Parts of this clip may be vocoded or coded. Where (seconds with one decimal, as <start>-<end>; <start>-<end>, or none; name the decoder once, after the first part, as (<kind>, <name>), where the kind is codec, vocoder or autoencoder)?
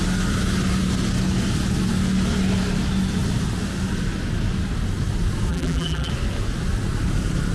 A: 5.5-6.1 (vocoder, BigVGAN v2)